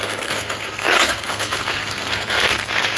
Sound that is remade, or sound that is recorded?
remade